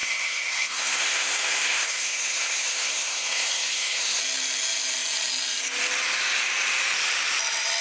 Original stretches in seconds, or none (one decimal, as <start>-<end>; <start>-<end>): 4.2-7.8

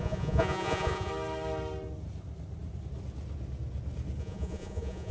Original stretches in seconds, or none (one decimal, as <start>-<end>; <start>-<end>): 1.1-4.2

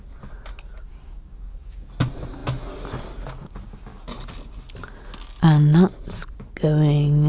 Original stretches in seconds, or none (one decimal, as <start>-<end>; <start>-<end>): 0.0-0.9; 1.9-3.4; 4.0-7.3

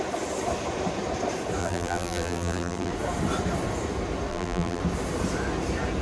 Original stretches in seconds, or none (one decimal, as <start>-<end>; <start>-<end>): 0.0-1.6; 2.9-4.3; 4.8-6.0

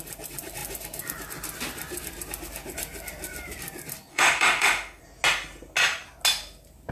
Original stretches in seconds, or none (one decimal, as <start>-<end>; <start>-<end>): 0.0-4.1; 5.0-6.9